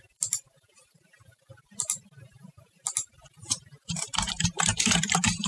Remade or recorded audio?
remade